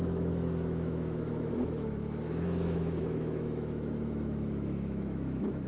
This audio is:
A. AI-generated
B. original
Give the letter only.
A